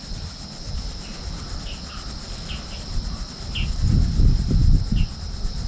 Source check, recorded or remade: recorded